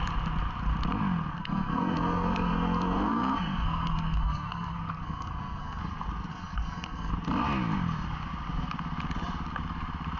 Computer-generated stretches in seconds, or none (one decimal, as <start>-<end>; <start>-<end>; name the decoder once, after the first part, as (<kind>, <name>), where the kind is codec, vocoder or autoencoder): 1.3-5.8 (codec, SNAC); 6.3-7.1